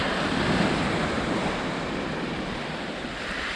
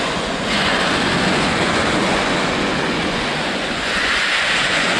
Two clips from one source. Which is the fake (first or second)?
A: second